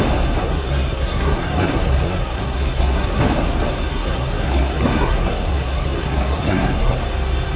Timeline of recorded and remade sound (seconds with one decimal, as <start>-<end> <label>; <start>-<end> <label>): 0.0-0.4 recorded; 0.4-3.2 remade; 3.2-3.9 recorded; 3.9-7.0 remade; 7.0-7.6 recorded